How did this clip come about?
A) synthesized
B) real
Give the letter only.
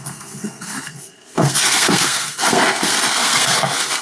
A